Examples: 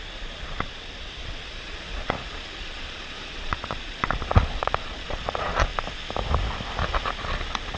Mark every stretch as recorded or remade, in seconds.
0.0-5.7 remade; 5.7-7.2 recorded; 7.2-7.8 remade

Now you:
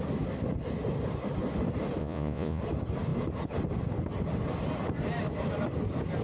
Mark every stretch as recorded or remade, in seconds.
0.0-2.0 recorded; 2.0-2.6 remade; 2.6-6.2 recorded

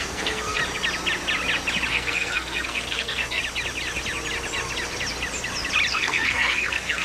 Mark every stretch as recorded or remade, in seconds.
0.0-0.6 remade; 0.6-1.9 recorded; 1.9-3.4 remade; 3.4-5.9 recorded; 5.9-7.0 remade

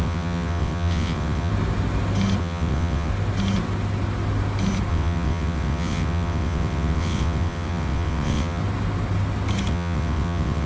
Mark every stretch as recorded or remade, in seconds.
0.0-1.5 remade; 1.5-2.4 recorded; 2.4-3.1 remade; 3.1-4.9 recorded; 4.9-8.6 remade; 8.6-9.7 recorded; 9.7-10.7 remade

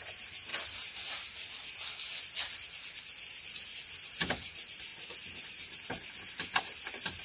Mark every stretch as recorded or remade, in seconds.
0.0-0.5 remade; 0.5-2.9 recorded; 2.9-7.2 remade